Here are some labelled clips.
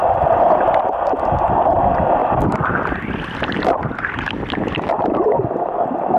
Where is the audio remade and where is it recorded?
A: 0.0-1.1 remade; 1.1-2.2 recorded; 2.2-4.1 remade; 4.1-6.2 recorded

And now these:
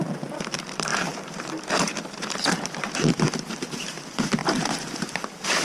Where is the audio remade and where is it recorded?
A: 0.0-4.4 remade; 4.4-5.0 recorded; 5.0-5.6 remade

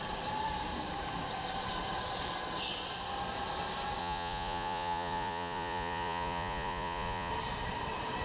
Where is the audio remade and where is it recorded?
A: 0.0-4.0 recorded; 4.0-7.3 remade; 7.3-8.2 recorded

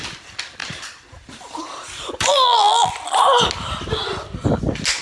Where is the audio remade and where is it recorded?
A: 0.0-2.3 recorded; 2.3-2.9 remade; 2.9-5.0 recorded

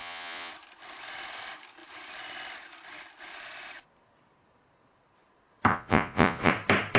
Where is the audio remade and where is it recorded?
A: 0.0-0.5 remade; 0.5-5.7 recorded; 5.7-6.5 remade; 6.5-7.0 recorded